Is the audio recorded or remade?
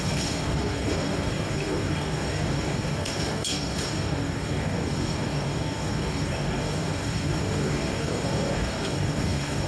remade